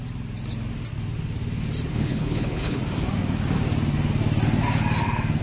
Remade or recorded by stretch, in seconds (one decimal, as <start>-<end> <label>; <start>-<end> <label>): 0.0-1.9 recorded; 1.9-2.8 remade; 2.8-5.4 recorded